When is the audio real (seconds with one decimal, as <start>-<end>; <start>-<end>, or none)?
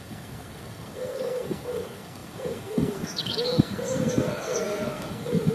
none